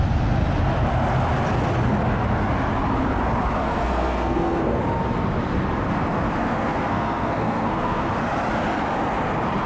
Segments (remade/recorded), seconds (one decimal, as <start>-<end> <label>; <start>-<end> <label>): 0.0-3.6 recorded; 3.6-4.8 remade; 4.8-6.4 recorded; 6.4-8.1 remade; 8.1-9.7 recorded